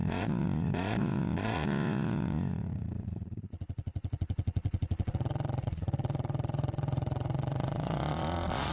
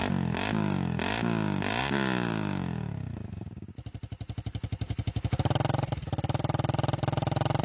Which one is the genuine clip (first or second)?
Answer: second